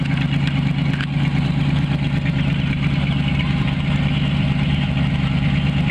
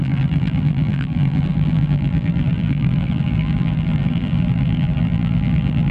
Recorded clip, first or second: first